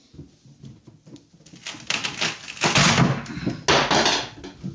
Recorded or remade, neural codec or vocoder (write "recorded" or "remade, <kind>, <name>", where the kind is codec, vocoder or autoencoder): recorded